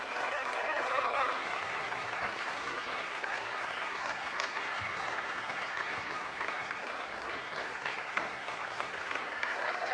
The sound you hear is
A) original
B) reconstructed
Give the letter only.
B